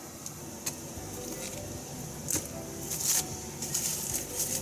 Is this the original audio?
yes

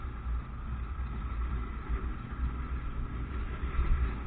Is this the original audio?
yes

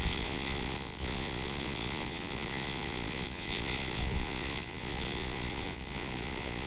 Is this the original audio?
no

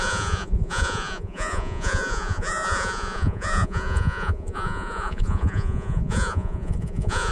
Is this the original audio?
no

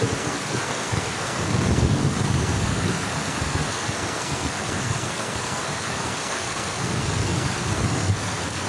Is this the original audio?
no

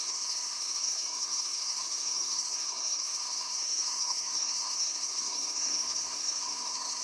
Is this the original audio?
no